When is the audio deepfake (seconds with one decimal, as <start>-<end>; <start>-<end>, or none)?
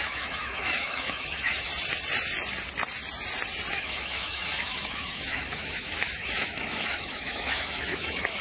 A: 0.0-1.7; 3.7-8.4